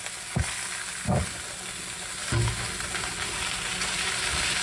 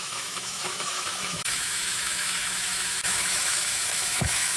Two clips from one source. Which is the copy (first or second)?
second